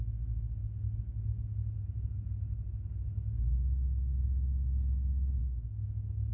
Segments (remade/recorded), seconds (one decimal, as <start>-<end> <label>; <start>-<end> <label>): 0.0-5.4 recorded; 5.4-6.3 remade